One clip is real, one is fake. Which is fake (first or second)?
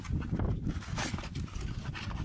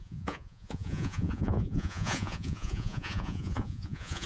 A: second